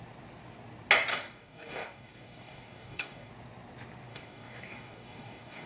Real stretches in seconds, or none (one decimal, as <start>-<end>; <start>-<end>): 0.0-1.1; 3.3-4.1